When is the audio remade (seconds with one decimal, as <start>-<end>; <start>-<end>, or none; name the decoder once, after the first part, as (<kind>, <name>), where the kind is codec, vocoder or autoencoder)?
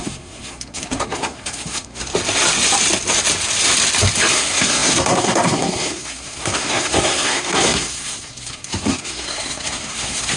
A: 0.0-2.1 (codec, SNAC); 4.3-10.4